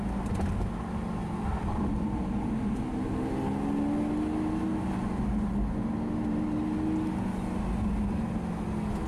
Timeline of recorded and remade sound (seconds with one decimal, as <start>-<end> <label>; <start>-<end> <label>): 0.0-1.2 recorded; 1.2-2.5 remade; 2.5-9.1 recorded